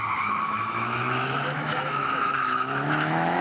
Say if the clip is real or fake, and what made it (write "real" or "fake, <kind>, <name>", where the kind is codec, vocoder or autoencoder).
fake, autoencoder, DAC-VAE